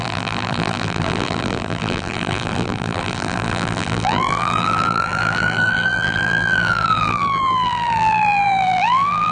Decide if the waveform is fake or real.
fake